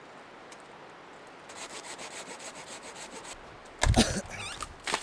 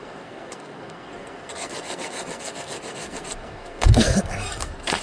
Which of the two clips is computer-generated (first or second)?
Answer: second